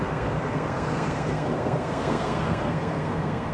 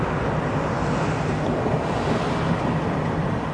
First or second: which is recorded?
second